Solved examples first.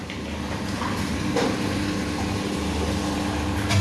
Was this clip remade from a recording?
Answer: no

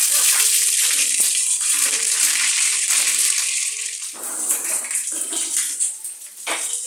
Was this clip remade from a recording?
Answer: yes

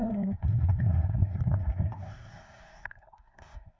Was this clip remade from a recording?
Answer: yes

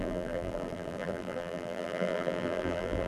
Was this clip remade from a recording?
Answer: yes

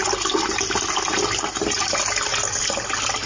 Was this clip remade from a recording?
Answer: no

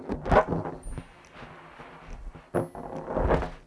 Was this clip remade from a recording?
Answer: no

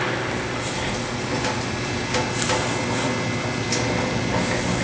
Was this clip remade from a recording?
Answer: no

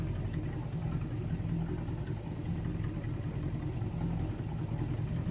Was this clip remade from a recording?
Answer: no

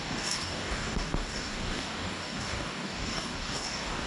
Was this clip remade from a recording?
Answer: yes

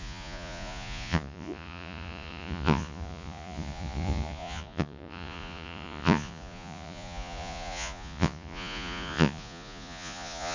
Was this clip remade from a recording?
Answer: yes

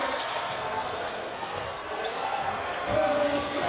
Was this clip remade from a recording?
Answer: yes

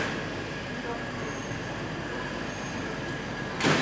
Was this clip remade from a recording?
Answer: no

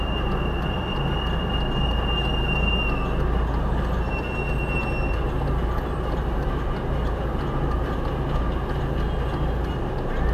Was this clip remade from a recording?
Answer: no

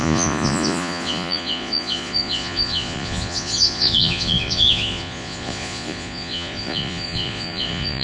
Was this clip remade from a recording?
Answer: yes